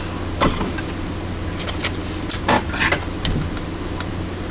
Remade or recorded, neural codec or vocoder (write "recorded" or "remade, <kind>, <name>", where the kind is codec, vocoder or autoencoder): recorded